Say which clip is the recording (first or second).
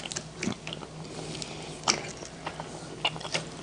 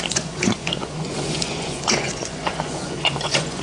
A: first